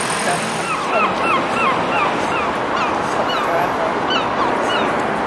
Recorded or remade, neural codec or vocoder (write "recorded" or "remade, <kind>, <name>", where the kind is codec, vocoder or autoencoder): recorded